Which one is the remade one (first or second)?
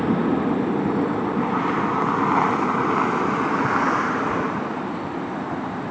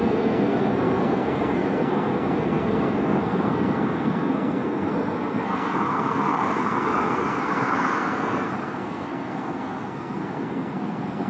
second